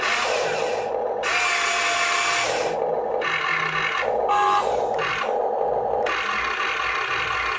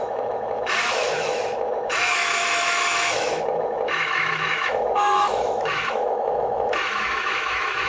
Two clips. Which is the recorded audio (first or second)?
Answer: first